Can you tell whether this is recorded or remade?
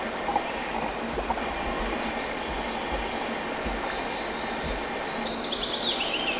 recorded